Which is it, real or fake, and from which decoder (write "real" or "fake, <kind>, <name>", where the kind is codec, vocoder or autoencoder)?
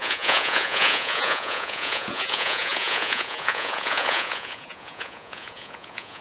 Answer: fake, vocoder, Vocos